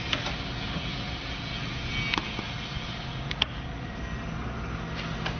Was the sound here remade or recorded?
recorded